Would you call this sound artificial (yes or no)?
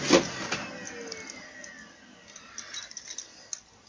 no